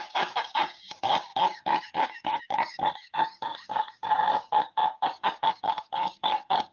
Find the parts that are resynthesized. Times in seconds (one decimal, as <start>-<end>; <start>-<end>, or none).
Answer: 0.0-6.7